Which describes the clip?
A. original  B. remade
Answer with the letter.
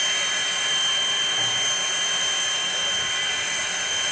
A